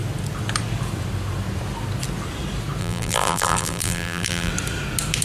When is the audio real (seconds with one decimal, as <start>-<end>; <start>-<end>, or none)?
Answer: 0.0-2.8; 4.5-5.2